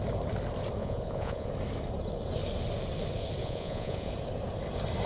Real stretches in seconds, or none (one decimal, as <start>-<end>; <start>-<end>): 0.0-0.8; 1.5-3.4; 4.1-5.1